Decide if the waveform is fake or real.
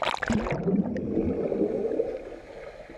real